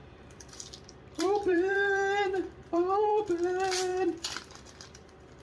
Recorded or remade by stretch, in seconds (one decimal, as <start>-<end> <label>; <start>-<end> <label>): 0.0-3.2 remade; 3.2-3.9 recorded; 3.9-5.4 remade